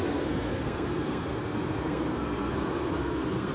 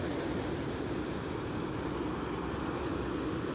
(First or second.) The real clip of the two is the second